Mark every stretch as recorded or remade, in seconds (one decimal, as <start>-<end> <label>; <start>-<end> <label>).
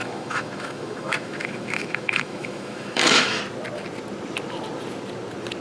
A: 0.0-3.4 remade; 3.4-5.6 recorded